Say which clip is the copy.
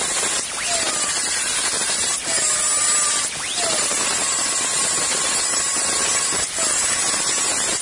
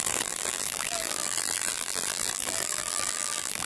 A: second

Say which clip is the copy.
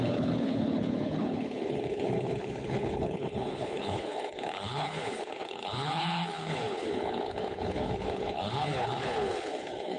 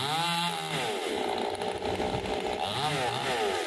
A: first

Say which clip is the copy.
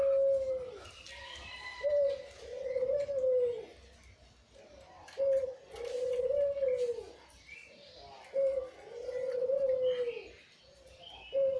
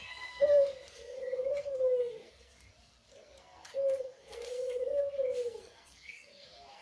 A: second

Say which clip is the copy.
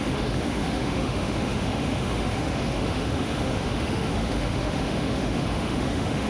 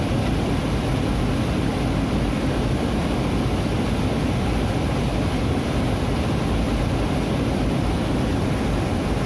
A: first